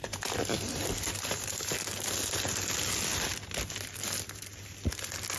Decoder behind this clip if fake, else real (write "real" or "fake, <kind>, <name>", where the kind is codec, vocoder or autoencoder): real